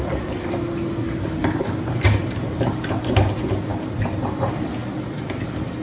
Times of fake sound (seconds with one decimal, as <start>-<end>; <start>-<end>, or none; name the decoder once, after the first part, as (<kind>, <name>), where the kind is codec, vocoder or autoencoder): 1.4-3.0 (vocoder, BigVGAN v2)